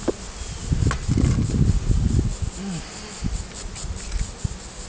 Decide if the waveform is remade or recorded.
recorded